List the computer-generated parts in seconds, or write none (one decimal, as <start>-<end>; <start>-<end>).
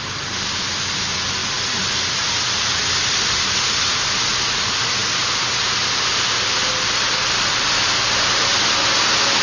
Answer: none